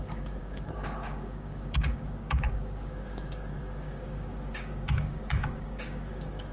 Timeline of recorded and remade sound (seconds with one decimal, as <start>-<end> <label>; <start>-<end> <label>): 0.0-6.5 remade